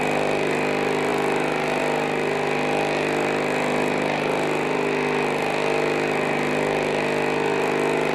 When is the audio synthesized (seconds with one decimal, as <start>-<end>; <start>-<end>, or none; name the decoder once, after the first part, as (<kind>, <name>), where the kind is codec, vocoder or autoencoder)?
none